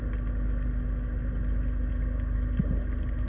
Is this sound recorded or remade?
recorded